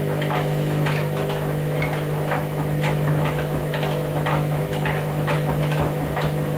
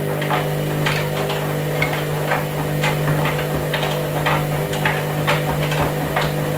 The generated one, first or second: first